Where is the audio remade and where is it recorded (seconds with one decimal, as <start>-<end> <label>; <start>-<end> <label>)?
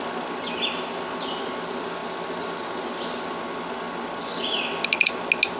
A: 0.0-5.6 recorded